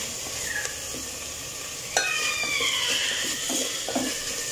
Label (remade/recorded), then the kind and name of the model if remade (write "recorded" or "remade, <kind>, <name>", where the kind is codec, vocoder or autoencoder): recorded